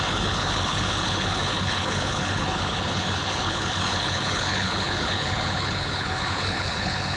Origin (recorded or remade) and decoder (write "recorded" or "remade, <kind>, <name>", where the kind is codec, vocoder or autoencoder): remade, codec, HILCodec